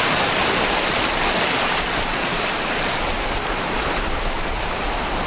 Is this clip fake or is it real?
fake